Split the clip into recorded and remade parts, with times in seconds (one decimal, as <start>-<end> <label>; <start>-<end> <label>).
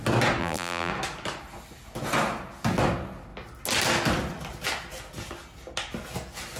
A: 0.0-0.4 recorded; 0.4-0.9 remade; 0.9-6.6 recorded